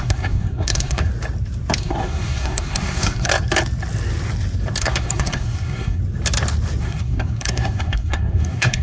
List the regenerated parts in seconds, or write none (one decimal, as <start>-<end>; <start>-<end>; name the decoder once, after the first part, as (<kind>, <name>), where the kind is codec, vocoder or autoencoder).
0.0-1.1 (codec, SNAC); 1.8-3.3; 4.8-6.0; 6.8-8.8